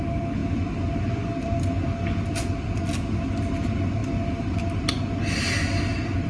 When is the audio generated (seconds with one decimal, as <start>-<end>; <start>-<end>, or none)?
none